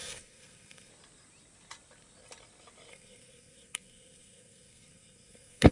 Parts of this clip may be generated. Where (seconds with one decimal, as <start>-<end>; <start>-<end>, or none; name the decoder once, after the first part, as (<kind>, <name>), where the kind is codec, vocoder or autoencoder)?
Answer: 0.0-0.9 (codec, SNAC); 2.9-5.7